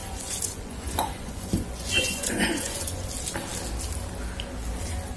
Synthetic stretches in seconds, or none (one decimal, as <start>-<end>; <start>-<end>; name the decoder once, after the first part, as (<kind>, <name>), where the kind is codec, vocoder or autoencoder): 0.0-3.1 (vocoder, Vocos)